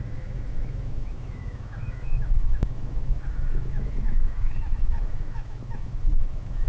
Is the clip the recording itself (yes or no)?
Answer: no